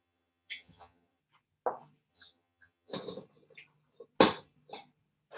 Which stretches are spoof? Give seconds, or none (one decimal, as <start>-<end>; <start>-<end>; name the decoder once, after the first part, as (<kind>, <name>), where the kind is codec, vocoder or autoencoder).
0.0-1.2 (vocoder, HiFi-GAN); 2.1-2.9